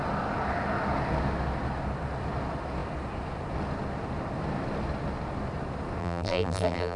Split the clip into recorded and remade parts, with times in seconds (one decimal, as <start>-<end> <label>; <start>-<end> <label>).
0.0-6.0 recorded; 6.0-7.0 remade